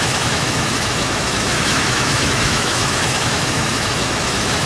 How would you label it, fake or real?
fake